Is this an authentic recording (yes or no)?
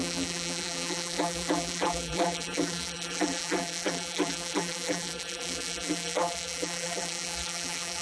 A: no